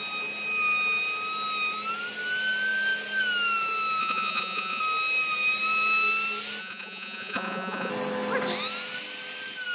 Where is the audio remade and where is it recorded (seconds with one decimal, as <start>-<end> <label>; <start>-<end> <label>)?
0.0-4.0 recorded; 4.0-4.8 remade; 4.8-6.6 recorded; 6.6-7.9 remade; 7.9-9.7 recorded